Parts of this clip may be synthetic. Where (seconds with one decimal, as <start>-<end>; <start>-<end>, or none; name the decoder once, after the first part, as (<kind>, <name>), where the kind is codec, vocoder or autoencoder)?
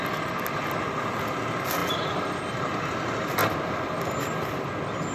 none